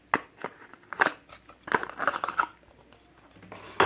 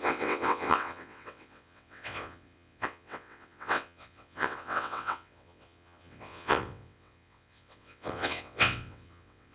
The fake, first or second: second